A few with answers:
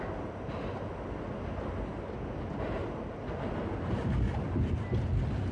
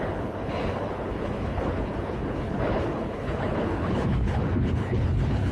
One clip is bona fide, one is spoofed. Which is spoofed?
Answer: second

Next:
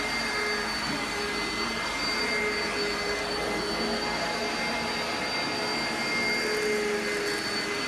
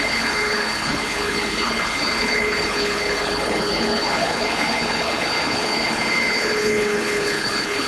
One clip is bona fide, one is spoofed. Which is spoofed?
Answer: second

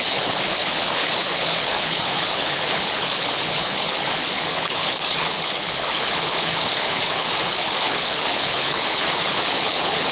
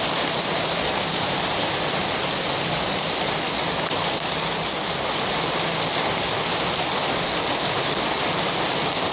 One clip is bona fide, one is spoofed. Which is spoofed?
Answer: first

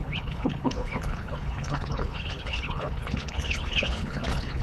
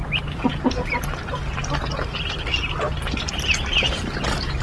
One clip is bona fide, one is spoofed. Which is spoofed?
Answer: first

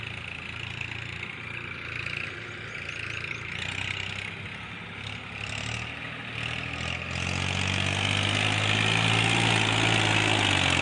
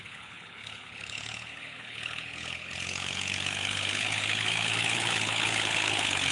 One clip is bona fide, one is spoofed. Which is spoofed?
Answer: second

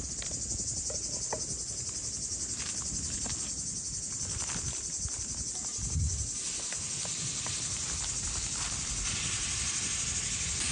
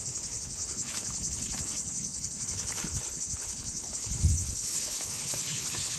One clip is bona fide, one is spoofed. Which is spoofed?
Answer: second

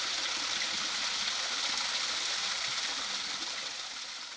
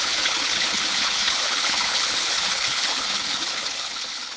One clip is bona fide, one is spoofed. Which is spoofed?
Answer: second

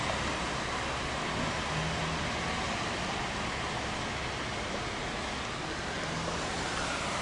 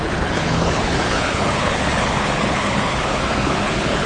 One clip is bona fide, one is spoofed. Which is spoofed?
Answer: second